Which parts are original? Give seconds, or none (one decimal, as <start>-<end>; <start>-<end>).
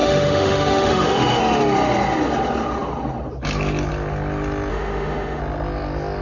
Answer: 1.4-4.7; 5.4-6.2